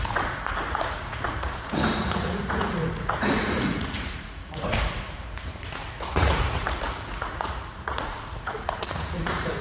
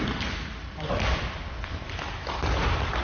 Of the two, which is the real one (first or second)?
second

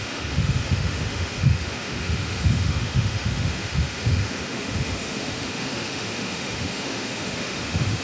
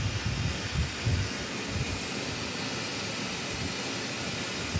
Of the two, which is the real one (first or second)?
second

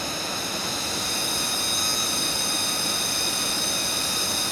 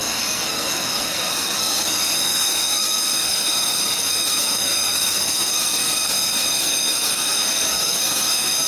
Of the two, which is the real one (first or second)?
first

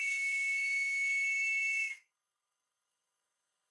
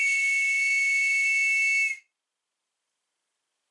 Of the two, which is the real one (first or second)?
second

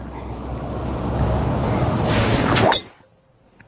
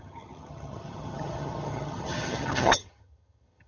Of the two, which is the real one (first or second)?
first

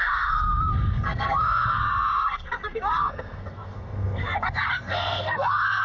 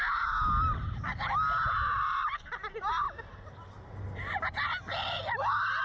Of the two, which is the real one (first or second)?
second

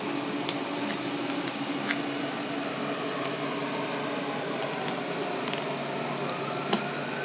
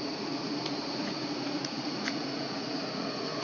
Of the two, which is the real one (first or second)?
first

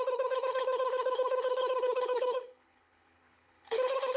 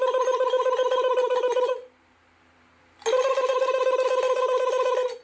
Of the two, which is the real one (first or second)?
second